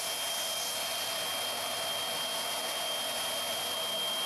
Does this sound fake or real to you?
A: real